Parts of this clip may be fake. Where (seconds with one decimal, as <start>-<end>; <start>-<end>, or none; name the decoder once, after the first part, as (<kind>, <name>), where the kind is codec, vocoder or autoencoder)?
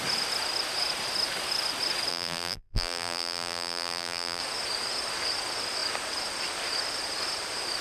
2.1-4.4 (vocoder, BigVGAN v2)